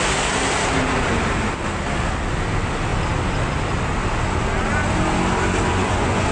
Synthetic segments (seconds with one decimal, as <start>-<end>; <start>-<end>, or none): 5.7-6.3